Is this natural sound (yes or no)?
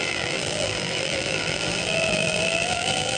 no